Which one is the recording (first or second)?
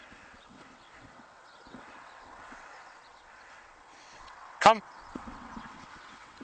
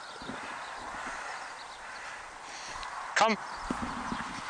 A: second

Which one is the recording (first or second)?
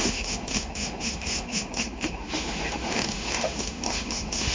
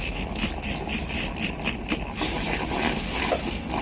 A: second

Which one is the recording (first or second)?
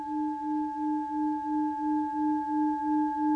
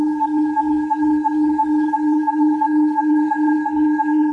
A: first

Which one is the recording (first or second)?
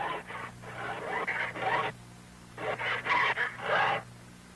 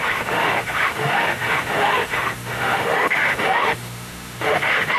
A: first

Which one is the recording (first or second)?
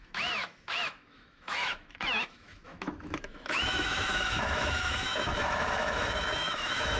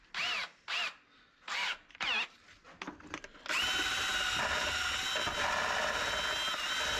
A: second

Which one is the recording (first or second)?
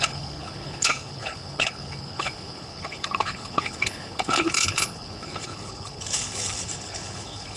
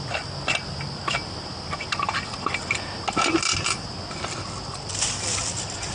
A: second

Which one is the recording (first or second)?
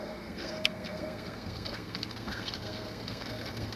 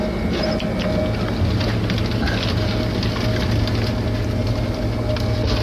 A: second